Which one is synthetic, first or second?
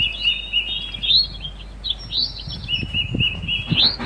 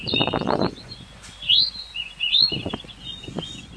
second